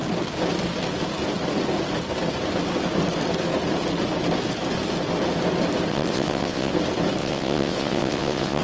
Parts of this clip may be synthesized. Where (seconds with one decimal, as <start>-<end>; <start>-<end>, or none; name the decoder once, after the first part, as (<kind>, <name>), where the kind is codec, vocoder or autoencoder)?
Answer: 5.9-6.7 (vocoder, WaveNeXt); 7.2-8.6